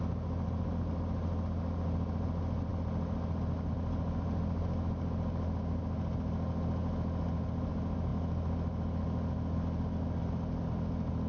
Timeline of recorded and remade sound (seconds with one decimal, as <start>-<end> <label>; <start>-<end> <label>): 0.0-11.3 recorded